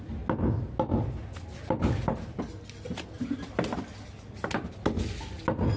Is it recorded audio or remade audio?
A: recorded